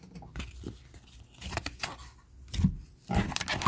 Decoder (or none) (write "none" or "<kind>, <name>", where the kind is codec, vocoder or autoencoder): none